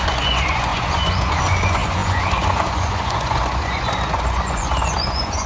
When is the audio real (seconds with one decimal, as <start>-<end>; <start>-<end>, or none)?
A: none